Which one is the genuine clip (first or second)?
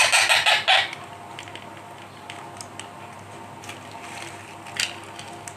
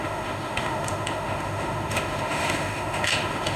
first